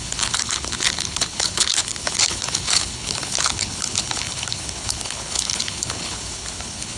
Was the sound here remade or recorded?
remade